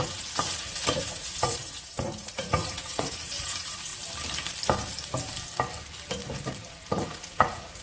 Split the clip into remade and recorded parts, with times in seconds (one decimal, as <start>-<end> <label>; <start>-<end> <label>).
0.0-3.9 remade; 3.9-6.7 recorded; 6.7-7.8 remade